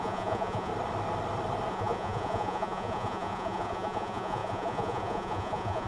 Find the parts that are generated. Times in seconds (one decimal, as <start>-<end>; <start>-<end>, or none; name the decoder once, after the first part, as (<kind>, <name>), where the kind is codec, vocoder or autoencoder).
0.0-0.7 (vocoder, Vocos); 1.7-5.9